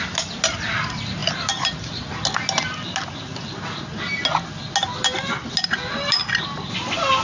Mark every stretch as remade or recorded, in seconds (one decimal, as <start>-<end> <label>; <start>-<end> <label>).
0.0-7.2 recorded